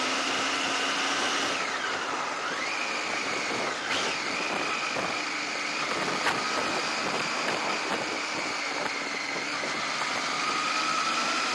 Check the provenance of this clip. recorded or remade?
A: recorded